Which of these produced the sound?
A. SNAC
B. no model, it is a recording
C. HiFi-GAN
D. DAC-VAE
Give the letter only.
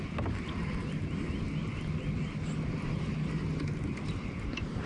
B